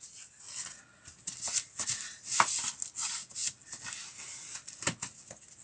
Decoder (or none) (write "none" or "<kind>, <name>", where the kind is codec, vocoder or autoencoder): none